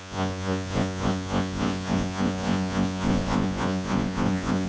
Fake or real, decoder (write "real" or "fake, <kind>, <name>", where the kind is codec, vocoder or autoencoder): fake, vocoder, Vocos